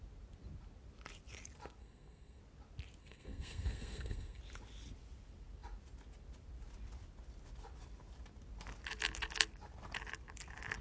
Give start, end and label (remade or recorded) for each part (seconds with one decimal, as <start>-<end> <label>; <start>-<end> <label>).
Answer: 0.0-1.8 recorded; 1.8-2.4 remade; 2.4-3.0 recorded; 3.0-4.4 remade; 4.4-10.8 recorded